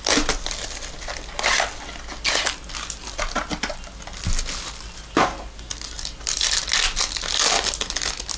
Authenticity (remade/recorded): recorded